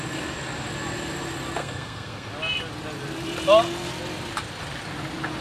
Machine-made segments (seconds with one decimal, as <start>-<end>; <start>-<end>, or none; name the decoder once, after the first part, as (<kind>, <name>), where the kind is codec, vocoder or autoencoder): 1.6-2.3 (codec, SNAC)